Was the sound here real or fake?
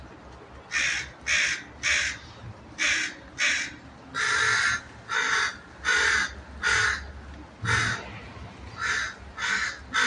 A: real